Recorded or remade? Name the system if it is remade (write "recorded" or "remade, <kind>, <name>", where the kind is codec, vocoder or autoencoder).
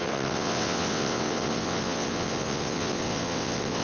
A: remade, vocoder, WaveNeXt